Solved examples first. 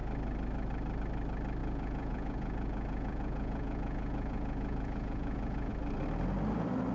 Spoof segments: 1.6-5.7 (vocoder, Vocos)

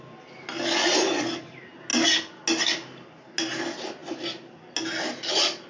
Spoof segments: none

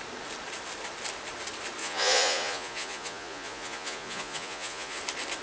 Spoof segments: 1.8-5.0 (vocoder, Vocos)

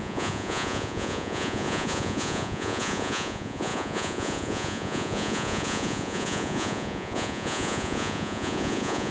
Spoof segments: 0.0-9.1 (vocoder, Vocos)

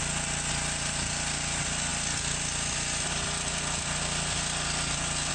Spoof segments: none

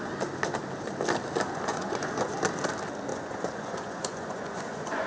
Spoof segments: 1.7-2.3 (vocoder, Vocos); 3.1-5.1

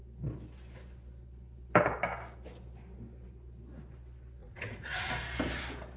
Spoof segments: 4.4-5.1 (vocoder, Vocos)